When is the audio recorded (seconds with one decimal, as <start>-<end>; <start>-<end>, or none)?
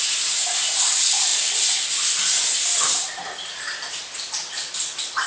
0.0-5.3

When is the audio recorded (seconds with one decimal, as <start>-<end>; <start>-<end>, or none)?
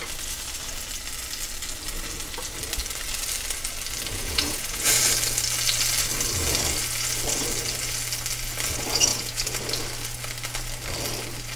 0.0-4.1; 5.0-9.1; 9.6-11.6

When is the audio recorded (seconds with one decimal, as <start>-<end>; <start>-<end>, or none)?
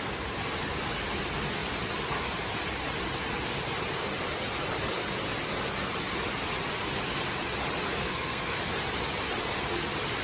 0.0-8.0; 8.6-10.2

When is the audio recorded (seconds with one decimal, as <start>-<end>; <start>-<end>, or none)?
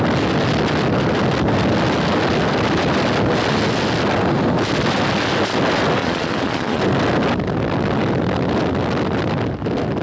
0.0-6.0; 6.8-10.0